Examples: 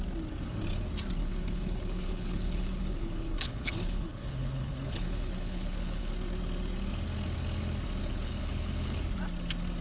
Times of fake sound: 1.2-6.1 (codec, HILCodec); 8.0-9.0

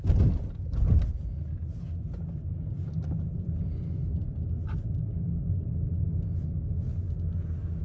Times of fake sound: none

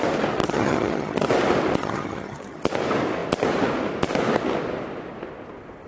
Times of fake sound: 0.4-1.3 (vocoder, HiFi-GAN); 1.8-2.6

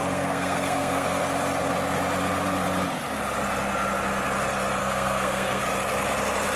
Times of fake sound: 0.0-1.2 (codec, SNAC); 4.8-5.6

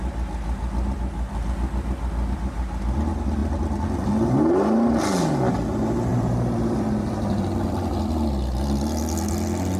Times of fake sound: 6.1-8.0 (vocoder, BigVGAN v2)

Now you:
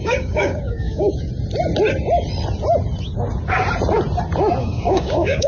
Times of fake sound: 0.0-1.3 (codec, DAC); 4.6-5.5

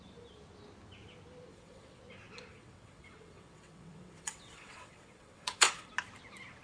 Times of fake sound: 1.5-2.0 (vocoder, WaveNeXt); 2.5-5.9

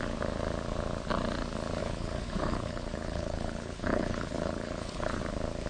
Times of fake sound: 1.8-5.2 (codec, HILCodec)